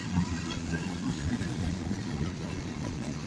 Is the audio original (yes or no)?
no